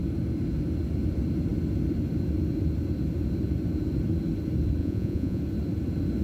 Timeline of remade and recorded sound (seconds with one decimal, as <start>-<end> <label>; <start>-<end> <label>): 0.0-4.8 recorded; 4.8-5.4 remade; 5.4-6.2 recorded